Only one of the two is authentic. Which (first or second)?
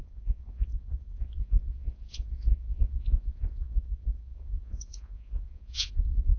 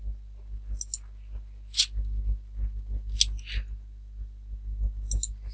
second